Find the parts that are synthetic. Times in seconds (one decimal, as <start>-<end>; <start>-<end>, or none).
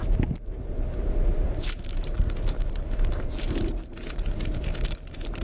1.3-4.5